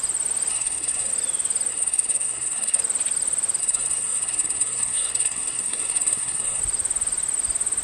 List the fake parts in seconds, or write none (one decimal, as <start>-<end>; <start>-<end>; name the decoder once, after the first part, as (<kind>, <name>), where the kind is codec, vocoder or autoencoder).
0.5-1.1 (codec, SNAC); 1.7-2.8; 3.6-6.6